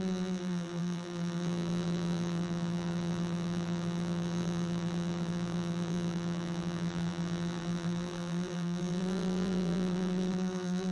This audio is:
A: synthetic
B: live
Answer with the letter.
A